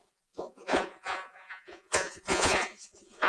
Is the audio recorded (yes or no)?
no